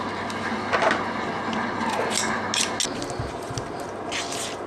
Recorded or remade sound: recorded